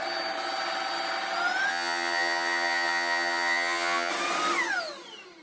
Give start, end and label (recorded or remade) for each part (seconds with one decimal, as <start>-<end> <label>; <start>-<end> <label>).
0.0-1.7 recorded; 1.7-4.1 remade; 4.1-5.4 recorded